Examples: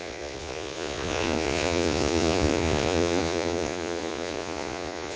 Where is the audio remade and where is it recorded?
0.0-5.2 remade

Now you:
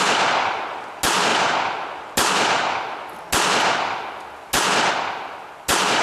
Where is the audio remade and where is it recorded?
0.0-6.0 recorded

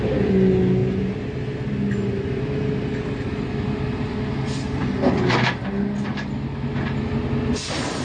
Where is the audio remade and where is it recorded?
0.0-8.0 recorded

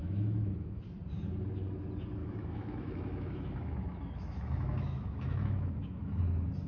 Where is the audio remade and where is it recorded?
0.0-0.8 remade; 0.8-2.2 recorded; 2.2-6.2 remade; 6.2-6.7 recorded

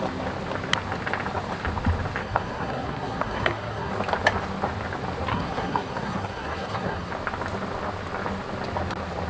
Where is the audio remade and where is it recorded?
0.0-2.2 recorded; 2.2-3.9 remade; 3.9-5.3 recorded; 5.3-7.1 remade; 7.1-9.3 recorded

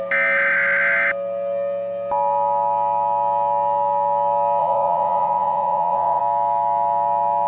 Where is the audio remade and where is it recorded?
0.0-4.6 recorded; 4.6-6.2 remade; 6.2-7.5 recorded